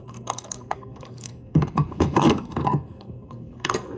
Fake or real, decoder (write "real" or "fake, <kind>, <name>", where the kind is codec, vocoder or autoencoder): fake, codec, SNAC